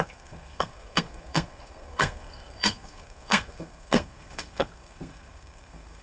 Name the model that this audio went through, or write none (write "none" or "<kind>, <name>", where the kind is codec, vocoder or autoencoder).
codec, SNAC